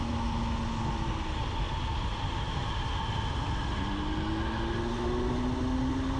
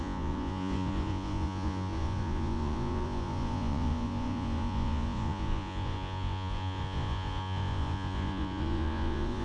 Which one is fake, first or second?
second